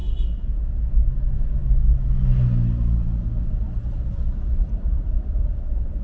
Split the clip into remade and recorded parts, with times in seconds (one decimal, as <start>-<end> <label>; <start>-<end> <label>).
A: 0.0-1.1 recorded; 1.1-1.6 remade; 1.6-3.4 recorded; 3.4-6.0 remade